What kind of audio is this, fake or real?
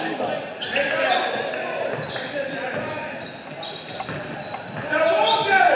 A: real